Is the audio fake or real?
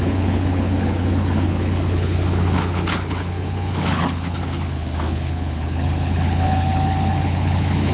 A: fake